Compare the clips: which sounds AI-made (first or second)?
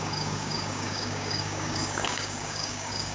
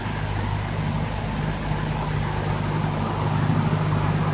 first